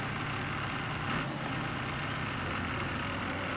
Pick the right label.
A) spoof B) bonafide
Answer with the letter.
B